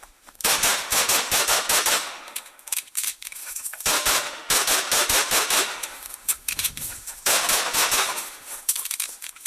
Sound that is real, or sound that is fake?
fake